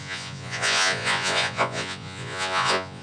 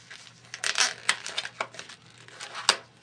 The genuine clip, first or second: second